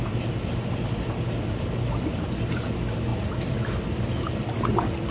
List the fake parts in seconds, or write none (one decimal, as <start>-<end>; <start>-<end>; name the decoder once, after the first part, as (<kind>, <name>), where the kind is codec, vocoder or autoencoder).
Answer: none